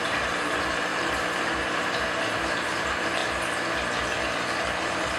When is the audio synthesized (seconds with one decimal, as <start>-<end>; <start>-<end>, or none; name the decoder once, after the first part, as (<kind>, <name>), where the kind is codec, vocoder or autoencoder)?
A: 0.0-3.2 (vocoder, BigVGAN v2); 4.8-5.2